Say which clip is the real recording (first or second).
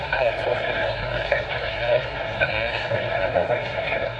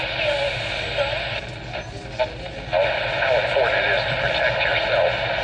second